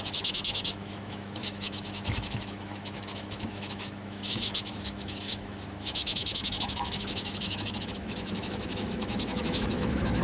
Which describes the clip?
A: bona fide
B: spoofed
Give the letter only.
B